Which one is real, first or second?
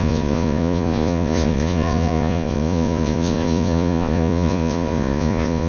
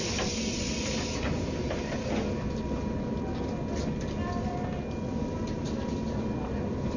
second